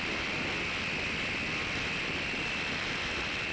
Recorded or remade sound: recorded